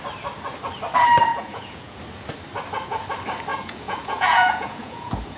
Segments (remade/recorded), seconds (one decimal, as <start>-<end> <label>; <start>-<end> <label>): 0.0-1.3 recorded; 1.3-2.0 remade; 2.0-3.5 recorded; 3.5-5.4 remade